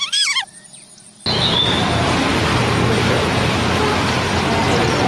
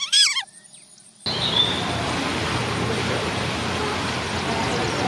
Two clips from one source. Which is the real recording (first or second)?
first